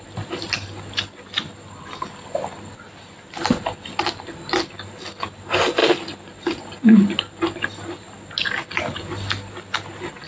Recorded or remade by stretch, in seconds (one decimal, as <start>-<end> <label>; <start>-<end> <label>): 0.0-10.3 recorded